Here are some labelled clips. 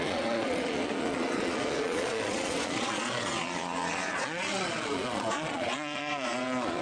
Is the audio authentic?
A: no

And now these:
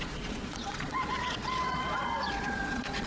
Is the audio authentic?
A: no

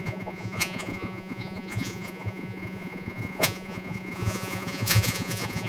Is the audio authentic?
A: no